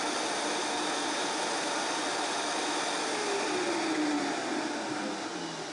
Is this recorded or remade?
recorded